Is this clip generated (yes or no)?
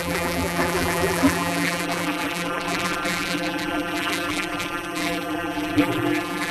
yes